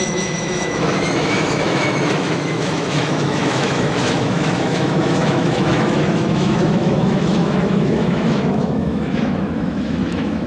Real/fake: fake